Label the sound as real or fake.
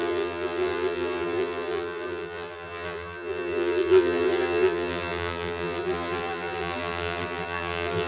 fake